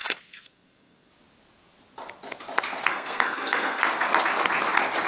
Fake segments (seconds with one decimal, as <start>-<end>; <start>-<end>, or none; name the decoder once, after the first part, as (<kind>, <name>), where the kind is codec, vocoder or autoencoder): 0.0-1.1 (codec, SNAC); 2.9-3.8